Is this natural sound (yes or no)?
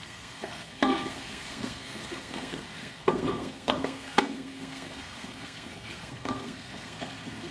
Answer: no